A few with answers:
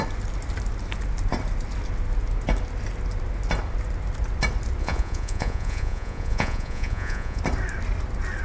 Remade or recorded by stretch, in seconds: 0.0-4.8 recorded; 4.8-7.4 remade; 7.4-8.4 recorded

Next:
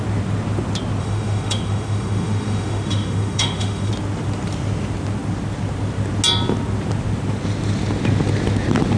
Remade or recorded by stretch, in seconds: 0.0-1.0 recorded; 1.0-3.9 remade; 3.9-9.0 recorded